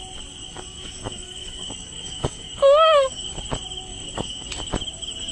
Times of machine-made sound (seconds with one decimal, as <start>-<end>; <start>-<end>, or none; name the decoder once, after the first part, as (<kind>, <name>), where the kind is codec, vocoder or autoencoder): 0.4-3.4 (codec, DAC); 3.9-4.6